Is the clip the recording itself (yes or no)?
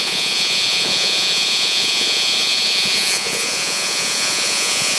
no